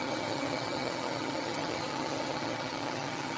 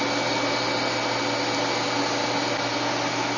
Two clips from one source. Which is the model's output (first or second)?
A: first